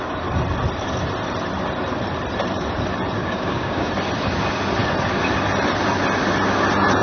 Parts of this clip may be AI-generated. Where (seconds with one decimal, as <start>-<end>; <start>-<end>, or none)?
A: 3.2-3.9